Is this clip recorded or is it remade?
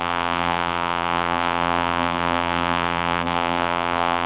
remade